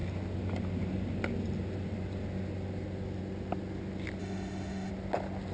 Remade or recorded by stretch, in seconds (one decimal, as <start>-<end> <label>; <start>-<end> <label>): 0.0-4.2 recorded; 4.2-4.9 remade; 4.9-5.5 recorded